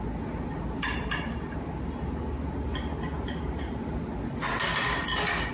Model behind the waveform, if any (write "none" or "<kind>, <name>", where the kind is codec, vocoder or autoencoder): none